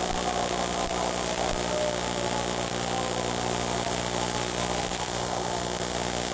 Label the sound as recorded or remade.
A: recorded